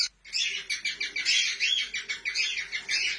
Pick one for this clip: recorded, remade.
recorded